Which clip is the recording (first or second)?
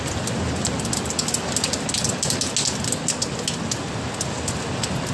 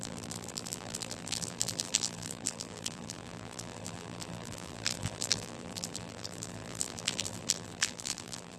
first